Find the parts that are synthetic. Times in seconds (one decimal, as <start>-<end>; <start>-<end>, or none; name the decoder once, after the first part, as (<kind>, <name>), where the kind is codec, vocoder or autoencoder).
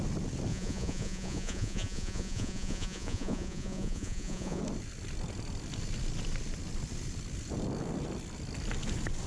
0.5-4.6 (vocoder, Vocos)